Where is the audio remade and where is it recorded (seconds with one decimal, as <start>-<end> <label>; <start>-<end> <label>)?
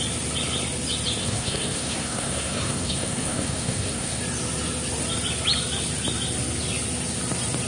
0.0-1.2 recorded; 1.2-4.2 remade; 4.2-7.7 recorded